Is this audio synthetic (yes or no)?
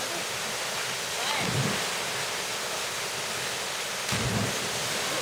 no